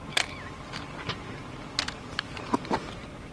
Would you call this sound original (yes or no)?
yes